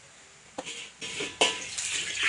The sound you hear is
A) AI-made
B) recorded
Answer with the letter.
B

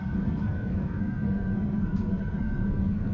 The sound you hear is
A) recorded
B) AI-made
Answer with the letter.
B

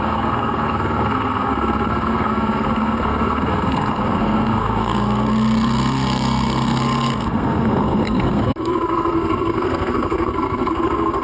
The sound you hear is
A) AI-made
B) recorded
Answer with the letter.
A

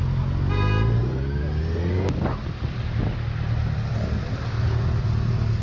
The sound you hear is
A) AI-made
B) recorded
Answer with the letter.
B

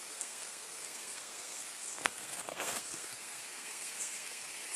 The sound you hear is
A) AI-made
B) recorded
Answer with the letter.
A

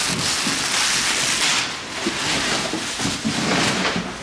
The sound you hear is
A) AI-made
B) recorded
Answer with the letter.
B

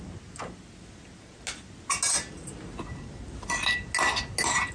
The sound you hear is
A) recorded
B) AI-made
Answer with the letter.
A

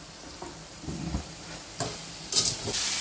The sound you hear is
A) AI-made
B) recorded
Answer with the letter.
B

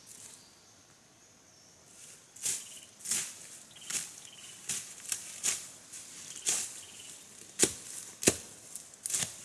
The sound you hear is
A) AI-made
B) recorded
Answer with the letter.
B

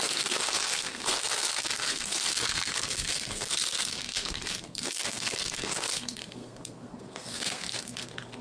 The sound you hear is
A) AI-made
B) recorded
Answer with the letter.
A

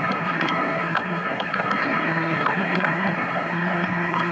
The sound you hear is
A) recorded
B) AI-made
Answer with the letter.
B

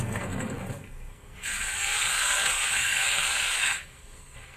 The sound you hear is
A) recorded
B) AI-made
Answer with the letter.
B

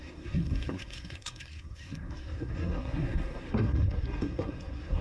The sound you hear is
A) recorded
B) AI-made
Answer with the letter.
B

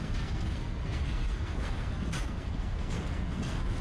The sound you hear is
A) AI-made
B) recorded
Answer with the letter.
A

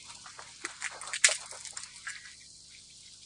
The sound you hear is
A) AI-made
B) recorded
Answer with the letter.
B